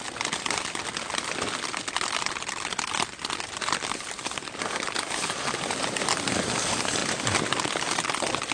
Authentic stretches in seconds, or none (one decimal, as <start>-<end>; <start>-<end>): 0.0-8.5